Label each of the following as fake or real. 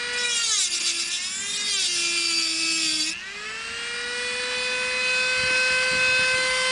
real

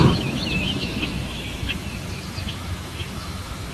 fake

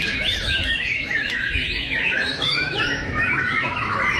fake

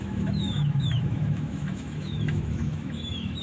fake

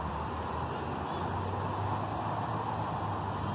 real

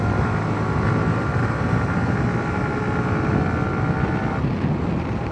real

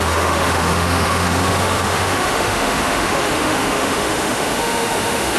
fake